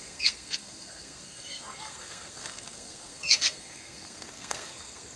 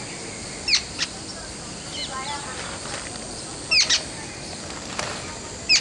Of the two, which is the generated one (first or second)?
first